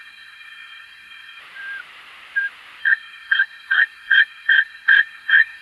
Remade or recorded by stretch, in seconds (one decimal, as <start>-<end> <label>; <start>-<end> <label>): 0.0-1.4 remade; 1.4-2.8 recorded; 2.8-5.6 remade